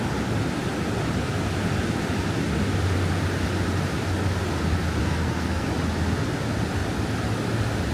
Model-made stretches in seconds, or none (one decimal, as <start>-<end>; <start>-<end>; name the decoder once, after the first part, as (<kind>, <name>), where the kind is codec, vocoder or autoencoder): 5.0-5.7 (codec, SNAC)